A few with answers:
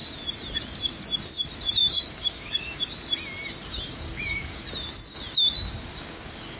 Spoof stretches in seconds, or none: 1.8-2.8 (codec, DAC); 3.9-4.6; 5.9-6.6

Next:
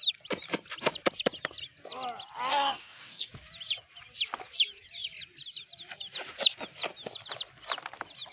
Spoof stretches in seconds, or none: 2.5-3.3 (codec, DAC)

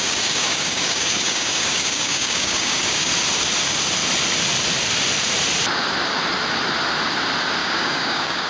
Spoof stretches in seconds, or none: 0.0-3.1 (codec, DAC); 7.6-8.5

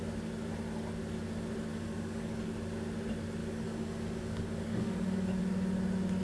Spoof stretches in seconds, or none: 1.7-2.4 (codec, DAC); 3.4-5.4

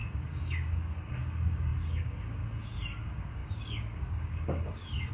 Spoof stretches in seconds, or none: 0.0-5.1 (codec, DAC)

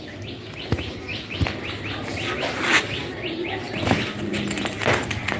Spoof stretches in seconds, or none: none

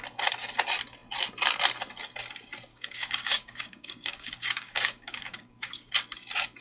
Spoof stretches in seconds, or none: 2.7-5.9 (codec, DAC)